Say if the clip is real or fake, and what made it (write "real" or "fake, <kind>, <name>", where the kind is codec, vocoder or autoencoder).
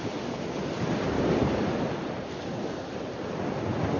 fake, vocoder, BigVGAN v2